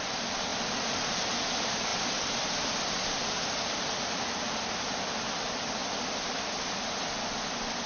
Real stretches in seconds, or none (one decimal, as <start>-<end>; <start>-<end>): 0.0-7.9